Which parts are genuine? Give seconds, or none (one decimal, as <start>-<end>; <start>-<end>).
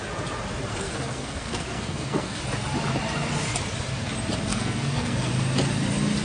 0.0-0.7; 2.4-4.5; 5.3-6.2